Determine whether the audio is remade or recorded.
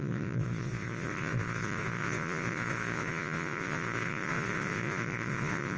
remade